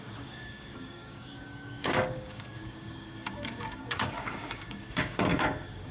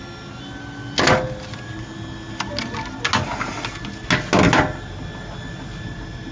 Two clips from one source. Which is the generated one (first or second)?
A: first